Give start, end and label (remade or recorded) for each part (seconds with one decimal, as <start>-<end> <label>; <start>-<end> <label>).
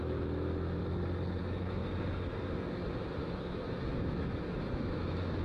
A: 0.0-0.8 remade; 0.8-1.4 recorded; 1.4-1.8 remade; 1.8-3.2 recorded; 3.2-5.4 remade